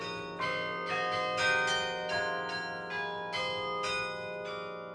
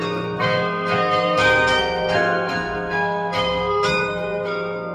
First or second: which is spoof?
second